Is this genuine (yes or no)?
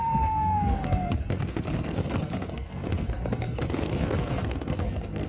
no